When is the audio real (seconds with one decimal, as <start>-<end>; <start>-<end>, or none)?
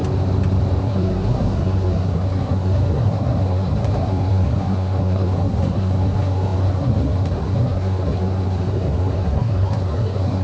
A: 0.0-0.8